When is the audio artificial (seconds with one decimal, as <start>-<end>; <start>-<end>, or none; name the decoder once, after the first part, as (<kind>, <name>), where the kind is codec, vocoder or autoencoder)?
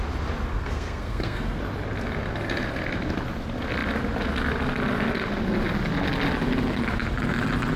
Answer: 0.5-1.6 (codec, SNAC)